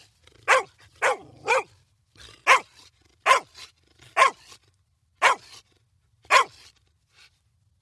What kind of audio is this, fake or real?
real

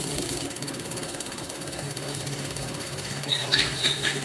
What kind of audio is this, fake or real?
fake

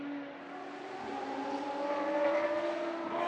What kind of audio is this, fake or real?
real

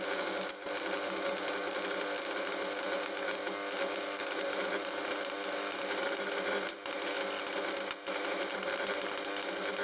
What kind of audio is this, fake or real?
real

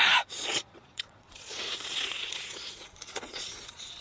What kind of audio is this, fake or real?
fake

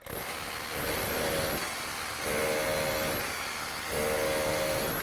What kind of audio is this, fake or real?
real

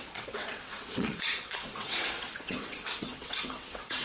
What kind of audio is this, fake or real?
fake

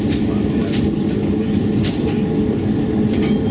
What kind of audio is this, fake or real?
real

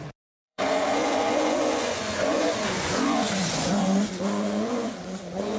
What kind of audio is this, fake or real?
fake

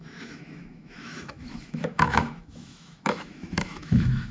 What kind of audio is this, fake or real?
fake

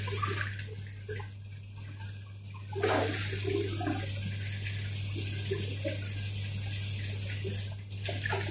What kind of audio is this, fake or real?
real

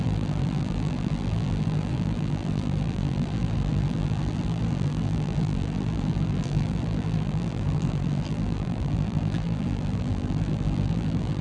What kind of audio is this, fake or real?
fake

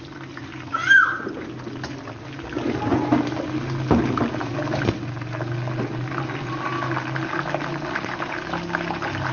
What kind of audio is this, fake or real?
real